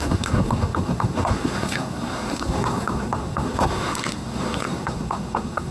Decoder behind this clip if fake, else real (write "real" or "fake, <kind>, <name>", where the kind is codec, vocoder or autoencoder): fake, codec, SNAC